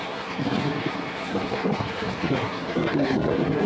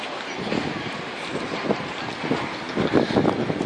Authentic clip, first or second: second